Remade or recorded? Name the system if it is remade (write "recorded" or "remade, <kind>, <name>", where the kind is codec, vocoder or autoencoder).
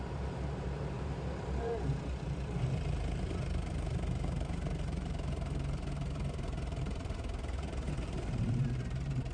remade, vocoder, BigVGAN v2